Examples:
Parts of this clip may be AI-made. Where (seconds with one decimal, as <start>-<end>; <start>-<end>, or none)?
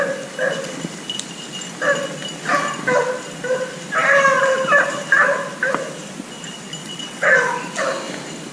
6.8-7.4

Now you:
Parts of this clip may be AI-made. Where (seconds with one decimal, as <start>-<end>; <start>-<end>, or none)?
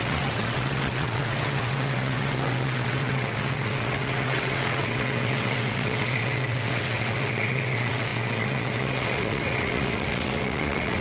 0.0-11.0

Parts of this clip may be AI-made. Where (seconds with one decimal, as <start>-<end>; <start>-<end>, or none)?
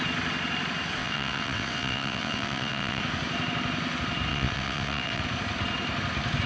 1.0-3.0; 4.3-5.2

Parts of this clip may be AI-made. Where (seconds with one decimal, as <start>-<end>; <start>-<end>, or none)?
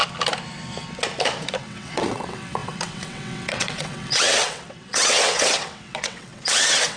1.6-7.0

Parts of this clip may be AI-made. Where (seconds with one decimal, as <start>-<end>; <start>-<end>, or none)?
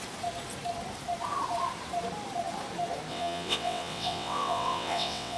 3.1-5.4